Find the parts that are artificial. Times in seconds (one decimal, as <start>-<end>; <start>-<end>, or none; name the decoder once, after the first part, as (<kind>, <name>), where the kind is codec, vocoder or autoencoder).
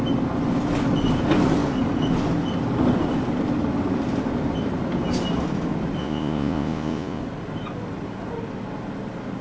6.0-7.2 (vocoder, Vocos)